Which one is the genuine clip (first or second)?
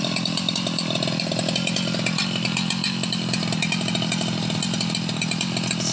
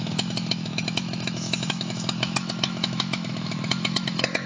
first